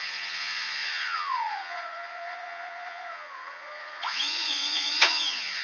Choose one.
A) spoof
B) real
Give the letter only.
A